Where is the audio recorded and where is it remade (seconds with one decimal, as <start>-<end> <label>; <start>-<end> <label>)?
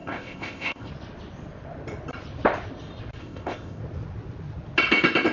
0.0-0.9 remade; 0.9-3.2 recorded; 3.2-3.8 remade; 3.8-5.3 recorded